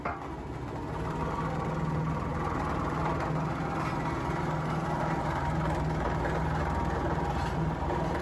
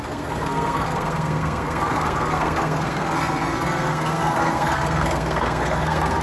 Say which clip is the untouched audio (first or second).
first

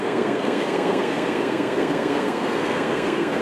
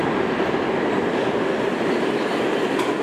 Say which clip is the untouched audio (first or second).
second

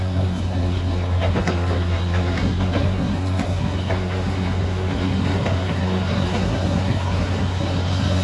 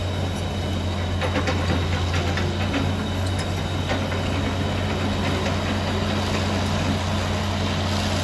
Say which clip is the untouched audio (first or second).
second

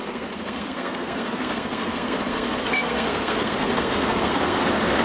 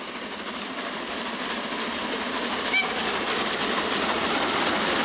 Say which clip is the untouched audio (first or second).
second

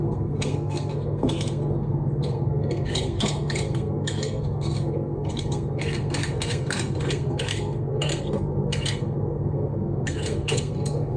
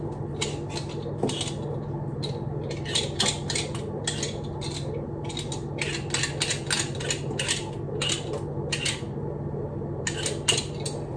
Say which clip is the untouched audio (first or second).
second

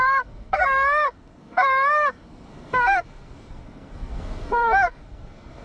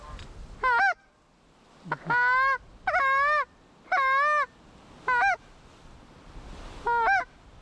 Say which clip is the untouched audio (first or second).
second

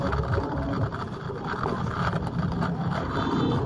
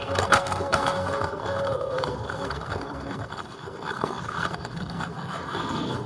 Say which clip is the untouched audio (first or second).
first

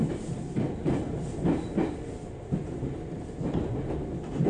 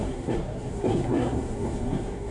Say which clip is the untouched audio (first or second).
first